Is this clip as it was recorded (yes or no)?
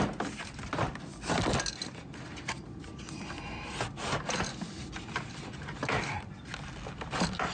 yes